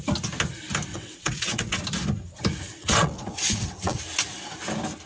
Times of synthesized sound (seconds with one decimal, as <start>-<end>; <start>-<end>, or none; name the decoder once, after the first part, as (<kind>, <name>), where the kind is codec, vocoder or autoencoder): 0.9-1.8 (vocoder, WaveNeXt); 2.8-4.0